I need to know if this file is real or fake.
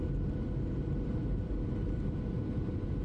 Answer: real